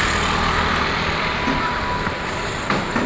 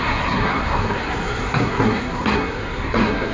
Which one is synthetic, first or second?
second